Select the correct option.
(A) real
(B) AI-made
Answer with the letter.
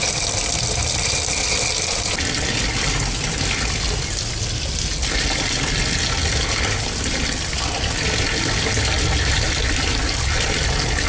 A